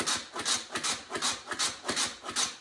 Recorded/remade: recorded